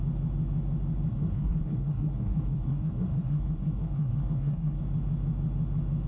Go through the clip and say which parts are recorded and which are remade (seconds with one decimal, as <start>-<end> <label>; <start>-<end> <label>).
0.0-1.1 recorded; 1.1-4.8 remade; 4.8-6.1 recorded